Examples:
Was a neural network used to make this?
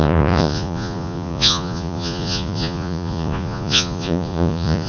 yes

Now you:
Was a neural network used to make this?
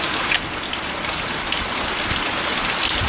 no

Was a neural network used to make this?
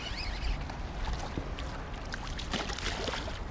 no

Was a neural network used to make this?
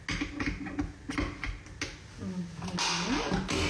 no